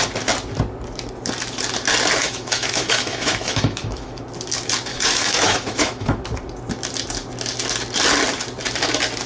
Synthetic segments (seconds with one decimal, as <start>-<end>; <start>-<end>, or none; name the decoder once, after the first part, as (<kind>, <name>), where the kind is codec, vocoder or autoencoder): 2.2-4.2 (autoencoder, DAC-VAE); 4.9-6.2